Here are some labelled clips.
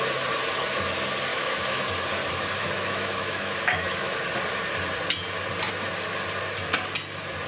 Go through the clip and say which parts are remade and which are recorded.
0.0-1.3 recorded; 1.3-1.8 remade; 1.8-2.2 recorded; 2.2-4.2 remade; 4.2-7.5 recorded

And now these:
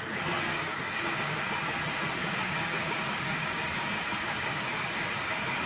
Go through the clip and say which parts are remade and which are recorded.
0.0-0.5 recorded; 0.5-1.4 remade; 1.4-2.2 recorded; 2.2-5.7 remade

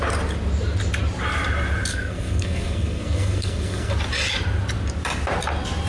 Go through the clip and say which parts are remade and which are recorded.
0.0-1.9 recorded; 1.9-3.9 remade; 3.9-5.9 recorded